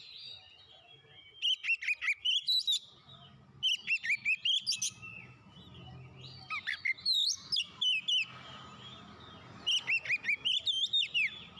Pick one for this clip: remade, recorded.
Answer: recorded